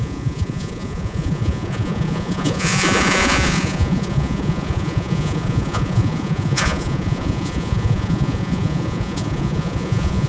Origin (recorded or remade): remade